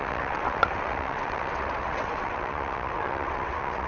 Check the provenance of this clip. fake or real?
fake